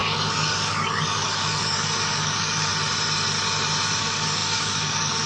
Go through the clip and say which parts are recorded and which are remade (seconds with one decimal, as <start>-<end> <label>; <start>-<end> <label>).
0.0-2.7 remade; 2.7-4.0 recorded; 4.0-5.3 remade